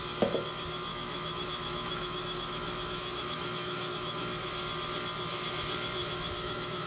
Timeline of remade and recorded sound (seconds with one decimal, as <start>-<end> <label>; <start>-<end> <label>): 0.0-0.9 recorded; 0.9-4.5 remade; 4.5-6.0 recorded; 6.0-6.9 remade